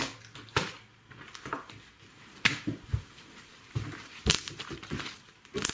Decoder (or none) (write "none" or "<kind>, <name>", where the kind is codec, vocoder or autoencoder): none